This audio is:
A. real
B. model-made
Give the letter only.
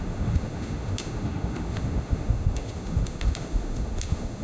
B